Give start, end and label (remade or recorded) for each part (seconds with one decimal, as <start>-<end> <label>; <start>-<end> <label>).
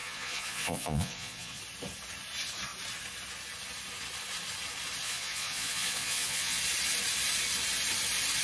0.0-1.6 remade; 1.6-5.0 recorded; 5.0-6.6 remade; 6.6-8.4 recorded